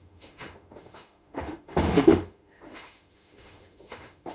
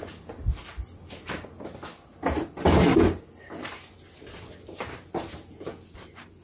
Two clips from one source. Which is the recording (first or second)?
second